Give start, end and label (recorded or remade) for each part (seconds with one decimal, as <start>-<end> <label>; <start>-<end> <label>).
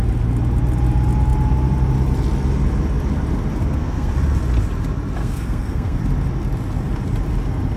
0.0-3.6 recorded; 3.6-4.1 remade; 4.1-5.2 recorded; 5.2-6.0 remade; 6.0-7.8 recorded